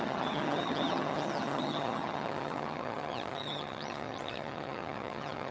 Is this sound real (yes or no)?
no